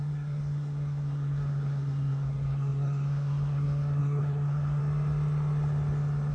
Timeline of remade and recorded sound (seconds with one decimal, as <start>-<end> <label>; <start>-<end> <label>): 0.0-4.8 remade; 4.8-6.3 recorded